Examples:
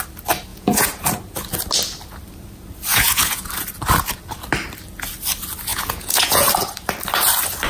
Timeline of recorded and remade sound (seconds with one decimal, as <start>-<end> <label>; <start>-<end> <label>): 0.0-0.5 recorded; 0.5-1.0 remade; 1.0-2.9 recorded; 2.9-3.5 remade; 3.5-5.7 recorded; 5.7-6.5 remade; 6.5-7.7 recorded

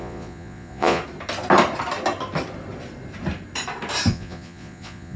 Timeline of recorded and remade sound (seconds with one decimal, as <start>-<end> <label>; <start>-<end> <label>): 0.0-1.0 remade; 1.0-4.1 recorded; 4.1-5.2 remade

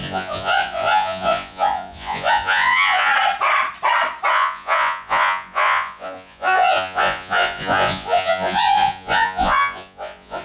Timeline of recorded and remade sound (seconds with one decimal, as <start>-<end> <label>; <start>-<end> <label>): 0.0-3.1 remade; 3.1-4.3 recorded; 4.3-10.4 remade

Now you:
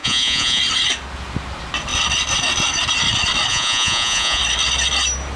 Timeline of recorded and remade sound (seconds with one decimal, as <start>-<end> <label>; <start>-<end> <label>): 0.0-0.6 remade; 0.6-3.5 recorded; 3.5-4.4 remade; 4.4-5.4 recorded

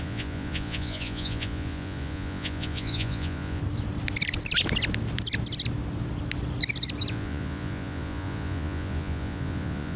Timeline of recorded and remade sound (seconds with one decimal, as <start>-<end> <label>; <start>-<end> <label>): 0.0-3.6 remade; 3.6-7.1 recorded; 7.1-10.0 remade

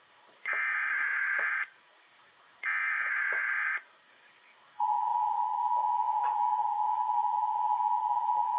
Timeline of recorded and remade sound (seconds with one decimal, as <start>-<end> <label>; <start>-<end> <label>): 0.0-8.6 remade

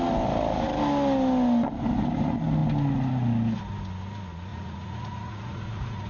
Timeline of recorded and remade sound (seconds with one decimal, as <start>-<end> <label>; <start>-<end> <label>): 0.0-4.5 recorded; 4.5-6.1 remade